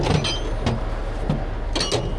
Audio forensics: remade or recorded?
recorded